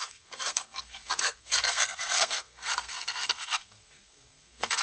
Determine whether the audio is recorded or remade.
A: remade